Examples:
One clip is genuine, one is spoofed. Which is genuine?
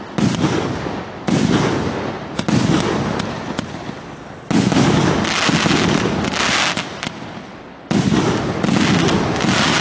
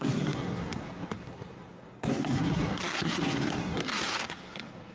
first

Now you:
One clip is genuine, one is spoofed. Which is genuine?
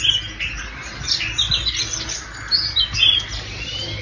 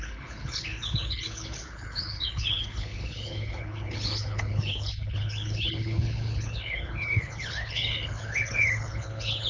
first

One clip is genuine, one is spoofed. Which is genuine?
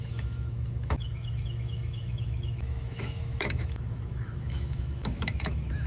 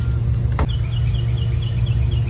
second